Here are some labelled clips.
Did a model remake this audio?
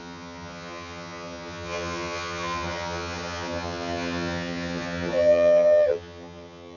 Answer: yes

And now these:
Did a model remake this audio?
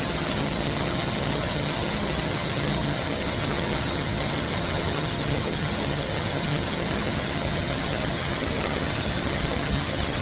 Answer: yes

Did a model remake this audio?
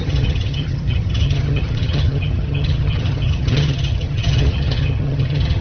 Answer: yes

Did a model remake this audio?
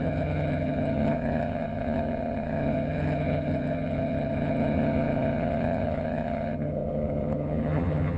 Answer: yes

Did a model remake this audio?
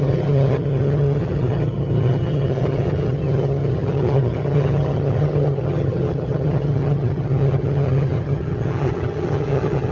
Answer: yes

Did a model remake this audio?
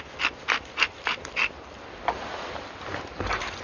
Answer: no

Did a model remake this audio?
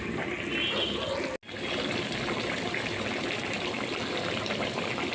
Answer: no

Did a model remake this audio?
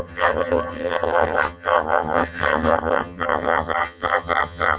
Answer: yes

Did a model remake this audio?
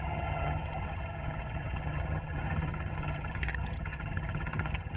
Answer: yes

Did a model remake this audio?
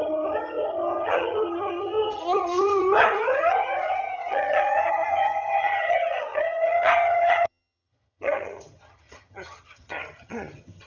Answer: yes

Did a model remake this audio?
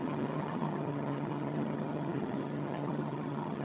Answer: yes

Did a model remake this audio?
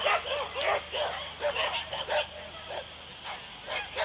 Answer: no